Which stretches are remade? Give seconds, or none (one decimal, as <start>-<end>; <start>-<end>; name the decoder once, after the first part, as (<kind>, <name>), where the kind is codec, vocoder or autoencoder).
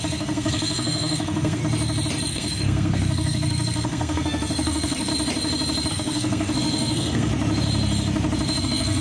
0.0-1.6 (codec, SNAC); 2.3-5.1; 5.9-7.3; 8.6-9.0